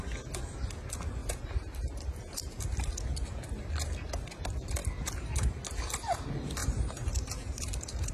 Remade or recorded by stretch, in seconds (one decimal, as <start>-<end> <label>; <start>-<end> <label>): 0.0-1.2 recorded; 1.2-2.6 remade; 2.6-6.6 recorded; 6.6-8.1 remade